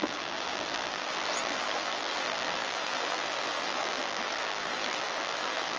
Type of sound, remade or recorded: remade